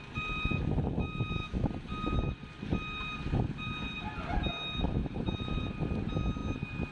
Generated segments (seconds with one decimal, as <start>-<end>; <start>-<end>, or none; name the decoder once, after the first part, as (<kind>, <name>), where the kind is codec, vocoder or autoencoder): 5.0-5.5 (vocoder, BigVGAN v2)